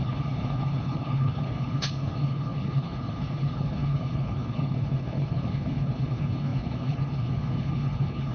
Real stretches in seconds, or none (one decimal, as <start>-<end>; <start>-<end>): none